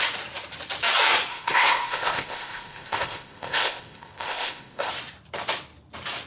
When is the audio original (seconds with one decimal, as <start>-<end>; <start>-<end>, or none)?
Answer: 0.0-1.3; 4.9-6.3